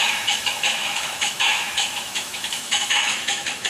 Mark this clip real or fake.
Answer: fake